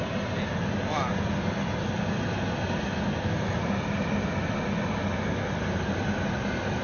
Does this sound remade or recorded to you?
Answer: recorded